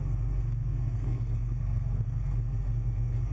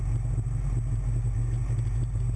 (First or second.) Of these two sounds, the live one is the second